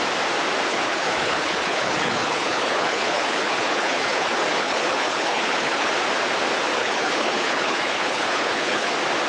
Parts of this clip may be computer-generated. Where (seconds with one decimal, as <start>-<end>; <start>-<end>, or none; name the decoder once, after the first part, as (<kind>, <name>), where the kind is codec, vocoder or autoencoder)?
0.7-5.9 (codec, HILCodec); 6.8-8.9